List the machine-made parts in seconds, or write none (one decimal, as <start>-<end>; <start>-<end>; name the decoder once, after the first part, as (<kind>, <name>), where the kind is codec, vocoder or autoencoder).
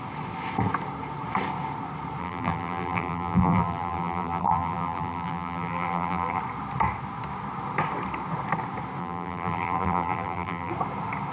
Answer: 2.2-6.4 (vocoder, BigVGAN v2); 9.0-10.7